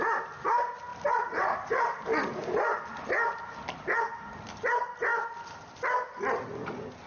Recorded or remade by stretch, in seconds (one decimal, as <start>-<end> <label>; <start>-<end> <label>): 0.0-7.1 recorded